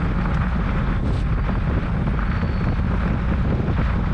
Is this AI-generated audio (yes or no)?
no